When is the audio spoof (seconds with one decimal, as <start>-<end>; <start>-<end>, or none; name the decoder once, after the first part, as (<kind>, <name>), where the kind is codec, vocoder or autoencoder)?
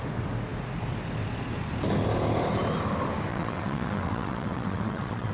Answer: 3.3-5.3 (vocoder, WaveNeXt)